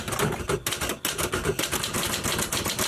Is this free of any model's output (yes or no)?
yes